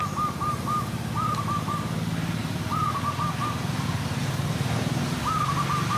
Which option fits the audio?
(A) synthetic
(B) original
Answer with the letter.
B